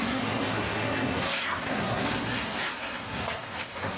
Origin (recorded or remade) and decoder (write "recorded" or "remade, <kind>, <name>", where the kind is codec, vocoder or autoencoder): remade, codec, SNAC